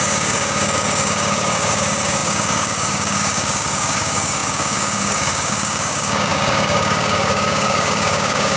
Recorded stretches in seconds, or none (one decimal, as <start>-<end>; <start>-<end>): none